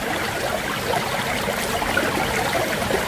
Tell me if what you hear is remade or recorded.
recorded